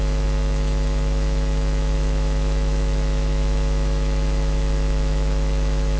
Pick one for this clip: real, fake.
fake